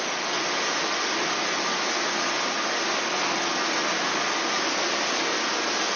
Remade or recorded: recorded